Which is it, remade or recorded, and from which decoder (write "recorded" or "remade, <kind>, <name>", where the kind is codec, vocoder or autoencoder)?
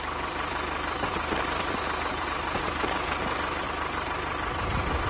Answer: remade, vocoder, BigVGAN v2